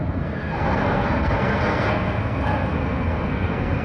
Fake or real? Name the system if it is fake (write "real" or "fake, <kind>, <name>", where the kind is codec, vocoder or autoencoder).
fake, codec, SNAC